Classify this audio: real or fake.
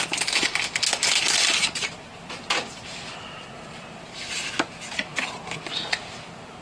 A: real